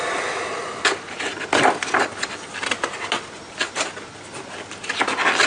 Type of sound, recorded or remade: recorded